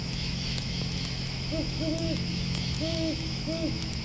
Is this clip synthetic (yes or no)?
yes